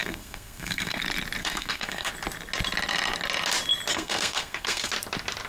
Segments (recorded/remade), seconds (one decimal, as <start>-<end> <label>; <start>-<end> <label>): 0.0-1.0 remade; 1.0-1.4 recorded; 1.4-2.1 remade; 2.1-3.9 recorded; 3.9-4.9 remade; 4.9-5.5 recorded